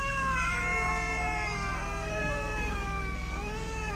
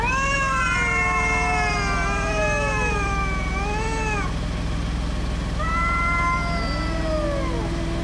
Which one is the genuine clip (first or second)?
second